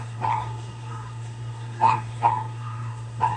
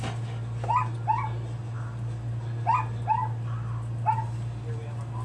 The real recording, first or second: second